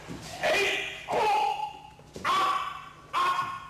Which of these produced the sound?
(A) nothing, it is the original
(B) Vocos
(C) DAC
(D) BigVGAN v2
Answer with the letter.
A